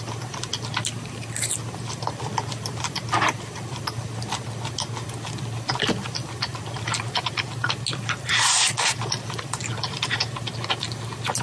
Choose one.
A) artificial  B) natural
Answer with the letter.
B